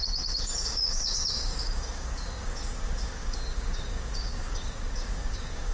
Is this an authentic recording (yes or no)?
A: no